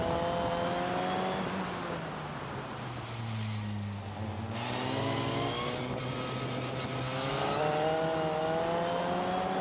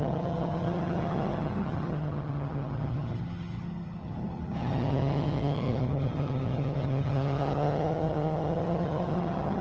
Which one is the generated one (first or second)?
second